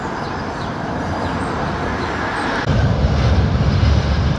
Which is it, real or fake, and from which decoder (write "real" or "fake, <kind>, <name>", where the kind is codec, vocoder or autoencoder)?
real